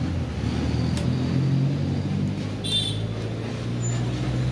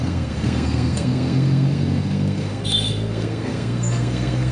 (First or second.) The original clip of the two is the first